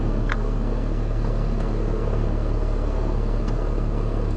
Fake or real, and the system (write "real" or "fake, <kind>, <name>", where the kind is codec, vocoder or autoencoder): fake, codec, SNAC